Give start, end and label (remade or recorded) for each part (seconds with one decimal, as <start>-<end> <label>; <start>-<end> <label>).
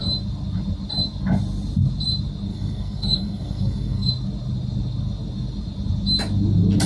0.0-2.5 recorded; 2.5-4.1 remade; 4.1-6.9 recorded